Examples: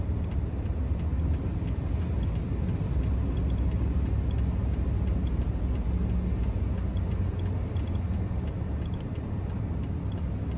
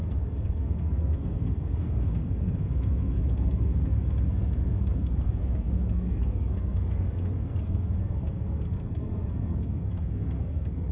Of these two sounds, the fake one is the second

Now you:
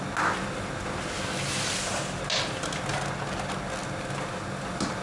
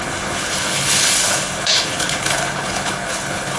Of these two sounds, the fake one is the second